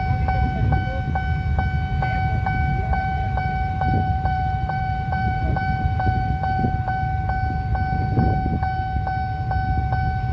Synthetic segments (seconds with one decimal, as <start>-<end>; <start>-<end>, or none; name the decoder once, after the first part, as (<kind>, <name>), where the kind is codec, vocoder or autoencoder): 2.7-6.9 (vocoder, BigVGAN v2)